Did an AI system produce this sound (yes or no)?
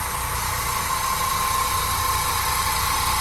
no